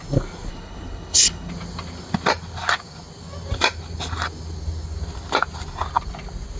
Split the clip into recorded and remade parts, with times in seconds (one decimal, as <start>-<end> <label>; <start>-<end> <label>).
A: 0.0-0.5 recorded; 0.5-1.5 remade; 1.5-6.6 recorded